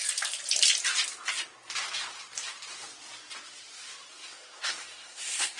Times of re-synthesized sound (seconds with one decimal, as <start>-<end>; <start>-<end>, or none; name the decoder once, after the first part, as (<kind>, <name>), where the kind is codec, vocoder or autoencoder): 4.1-5.6 (codec, SNAC)